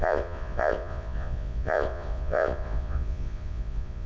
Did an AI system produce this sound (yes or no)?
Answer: yes